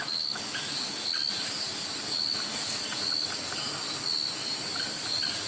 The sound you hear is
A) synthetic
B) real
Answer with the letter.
B